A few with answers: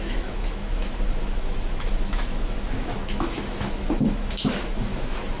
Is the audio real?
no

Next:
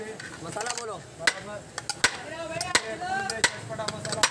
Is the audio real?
yes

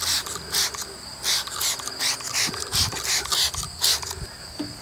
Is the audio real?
yes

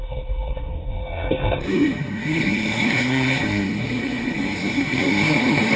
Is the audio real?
no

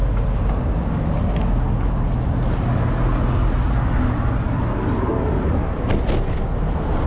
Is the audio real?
yes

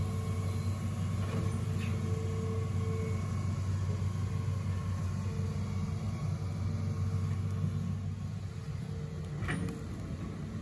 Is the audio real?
yes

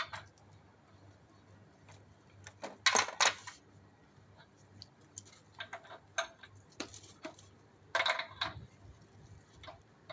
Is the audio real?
yes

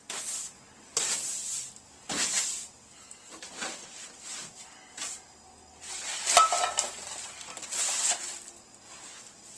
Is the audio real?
yes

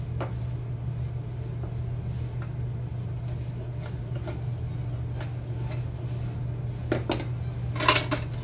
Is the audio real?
yes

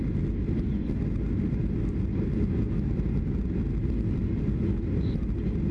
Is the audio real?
yes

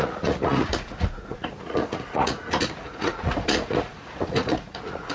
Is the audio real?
no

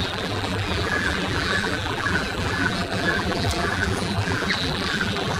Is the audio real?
no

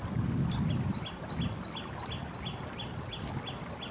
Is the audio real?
yes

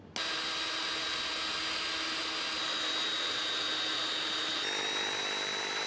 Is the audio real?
yes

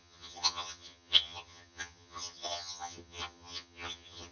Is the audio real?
no